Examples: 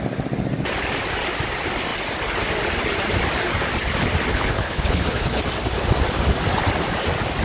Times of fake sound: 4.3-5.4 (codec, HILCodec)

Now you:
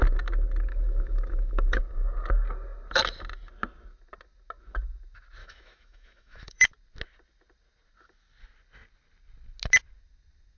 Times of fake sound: 0.7-1.8 (autoencoder, DAC-VAE); 5.4-6.7